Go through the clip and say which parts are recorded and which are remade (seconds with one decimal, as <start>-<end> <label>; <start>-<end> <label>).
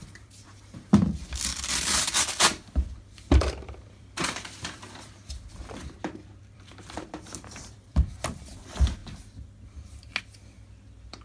0.0-9.0 remade; 9.0-10.2 recorded; 10.2-11.2 remade